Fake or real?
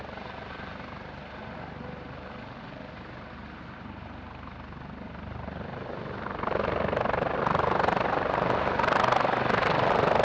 real